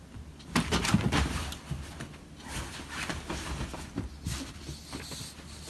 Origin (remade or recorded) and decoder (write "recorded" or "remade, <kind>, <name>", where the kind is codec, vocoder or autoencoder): recorded